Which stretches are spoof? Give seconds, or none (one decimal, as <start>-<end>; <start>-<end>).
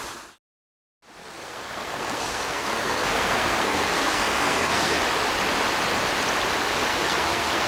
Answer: 1.2-5.0; 6.9-7.7